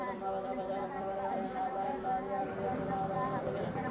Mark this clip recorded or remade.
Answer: remade